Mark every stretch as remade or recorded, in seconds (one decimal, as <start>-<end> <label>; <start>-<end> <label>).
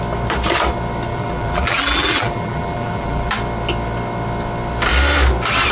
0.0-1.1 recorded; 1.1-3.3 remade; 3.3-5.7 recorded